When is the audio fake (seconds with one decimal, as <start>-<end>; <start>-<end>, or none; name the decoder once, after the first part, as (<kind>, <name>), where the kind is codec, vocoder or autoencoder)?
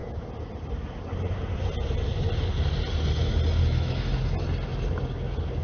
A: 3.6-4.1 (autoencoder, DAC-VAE)